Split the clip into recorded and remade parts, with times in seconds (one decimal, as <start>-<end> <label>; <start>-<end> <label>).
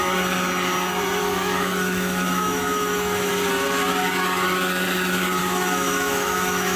0.0-1.2 recorded; 1.2-3.3 remade; 3.3-5.4 recorded; 5.4-6.8 remade